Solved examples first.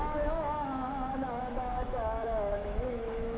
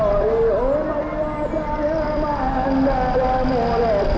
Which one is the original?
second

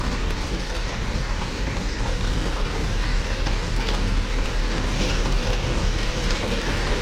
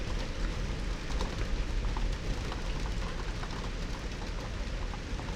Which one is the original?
second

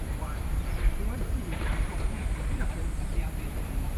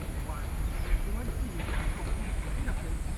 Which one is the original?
second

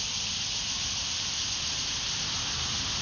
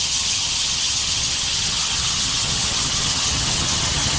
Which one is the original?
first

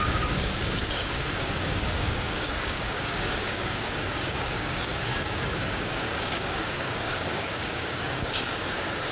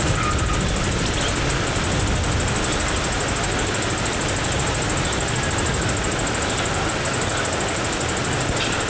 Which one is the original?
second